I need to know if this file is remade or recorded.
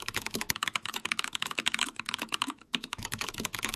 remade